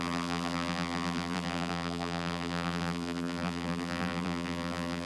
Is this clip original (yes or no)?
no